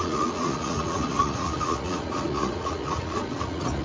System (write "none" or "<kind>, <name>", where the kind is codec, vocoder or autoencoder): vocoder, Vocos